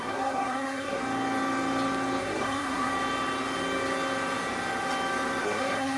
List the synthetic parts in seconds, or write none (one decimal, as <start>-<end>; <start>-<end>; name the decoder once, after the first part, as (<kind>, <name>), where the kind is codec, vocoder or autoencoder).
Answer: 0.0-1.0 (codec, SNAC); 2.2-2.9; 5.4-6.0